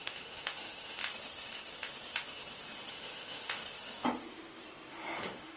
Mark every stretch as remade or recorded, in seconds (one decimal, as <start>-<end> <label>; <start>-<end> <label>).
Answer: 0.0-1.0 remade; 1.0-2.9 recorded; 2.9-3.6 remade; 3.6-4.9 recorded; 4.9-5.6 remade